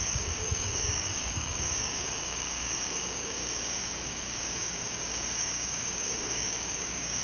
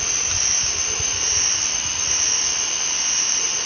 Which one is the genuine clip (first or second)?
second